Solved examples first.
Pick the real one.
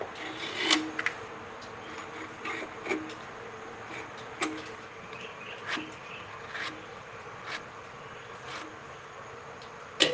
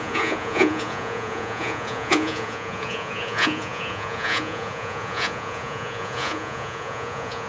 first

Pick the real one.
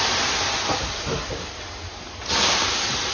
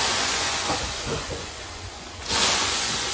first